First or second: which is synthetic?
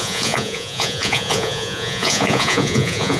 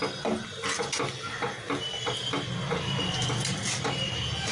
first